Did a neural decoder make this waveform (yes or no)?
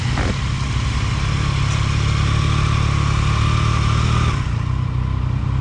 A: no